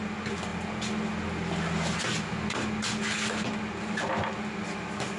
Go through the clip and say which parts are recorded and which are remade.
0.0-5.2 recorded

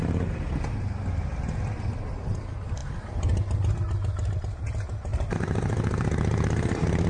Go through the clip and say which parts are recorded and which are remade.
0.0-5.1 recorded; 5.1-7.1 remade

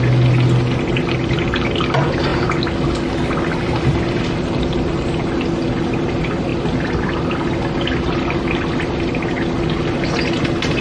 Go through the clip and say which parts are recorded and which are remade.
0.0-6.5 recorded; 6.5-9.4 remade; 9.4-10.8 recorded

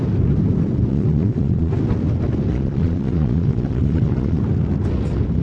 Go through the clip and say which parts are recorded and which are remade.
0.0-0.9 recorded; 0.9-1.7 remade; 1.7-2.5 recorded; 2.5-4.4 remade; 4.4-5.4 recorded

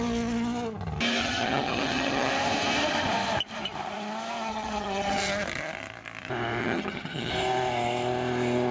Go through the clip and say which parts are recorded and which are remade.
0.0-1.2 recorded; 1.2-2.3 remade; 2.3-4.5 recorded; 4.5-5.3 remade; 5.3-6.6 recorded; 6.6-7.3 remade; 7.3-8.7 recorded

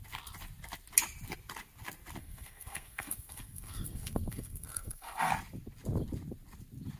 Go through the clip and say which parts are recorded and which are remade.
0.0-2.2 recorded; 2.2-5.3 remade; 5.3-7.0 recorded

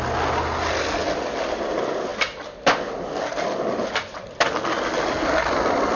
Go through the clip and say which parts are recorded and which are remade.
0.0-6.0 recorded

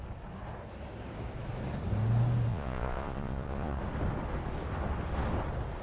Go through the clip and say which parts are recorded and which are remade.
0.0-2.5 recorded; 2.5-3.8 remade; 3.8-5.8 recorded